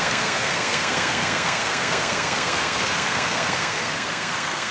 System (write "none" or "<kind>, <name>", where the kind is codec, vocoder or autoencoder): codec, SNAC